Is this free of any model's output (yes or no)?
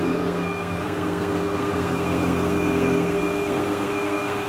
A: no